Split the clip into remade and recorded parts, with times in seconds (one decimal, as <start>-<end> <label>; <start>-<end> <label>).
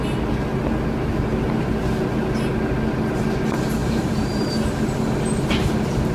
0.0-3.8 recorded; 3.8-4.7 remade; 4.7-6.1 recorded